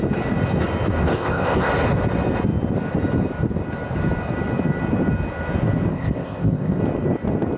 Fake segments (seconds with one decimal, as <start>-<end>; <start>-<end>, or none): 1.0-1.7; 5.9-6.8